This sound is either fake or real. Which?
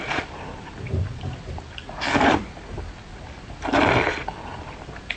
fake